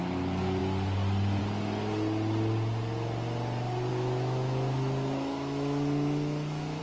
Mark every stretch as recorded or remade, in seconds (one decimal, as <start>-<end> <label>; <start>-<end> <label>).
0.0-3.9 recorded; 3.9-6.8 remade